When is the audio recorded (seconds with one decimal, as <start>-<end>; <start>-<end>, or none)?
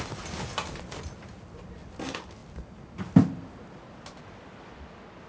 0.0-5.3